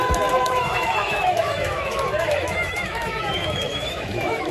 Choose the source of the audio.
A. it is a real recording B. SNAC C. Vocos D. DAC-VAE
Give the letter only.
D